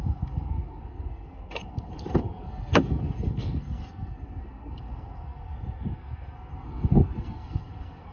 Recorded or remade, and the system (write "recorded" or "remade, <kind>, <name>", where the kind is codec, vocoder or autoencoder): remade, codec, SNAC